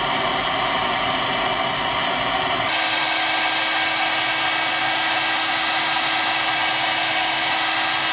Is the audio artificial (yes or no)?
no